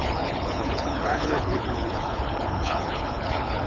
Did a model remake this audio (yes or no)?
yes